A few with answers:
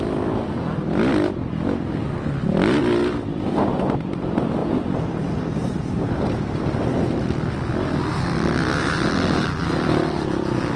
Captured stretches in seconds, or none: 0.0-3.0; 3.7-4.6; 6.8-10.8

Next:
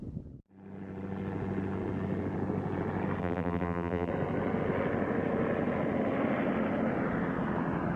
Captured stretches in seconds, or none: 0.0-3.2; 4.1-8.0

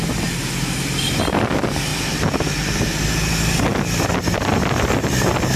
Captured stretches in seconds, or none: 0.0-5.6